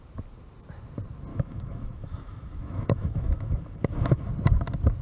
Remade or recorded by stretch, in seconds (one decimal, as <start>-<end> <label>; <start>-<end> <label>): 0.0-1.3 recorded; 1.3-4.3 remade; 4.3-5.0 recorded